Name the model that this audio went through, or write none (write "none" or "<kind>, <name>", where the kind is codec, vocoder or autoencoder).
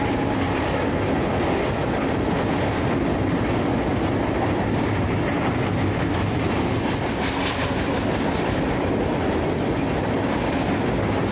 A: none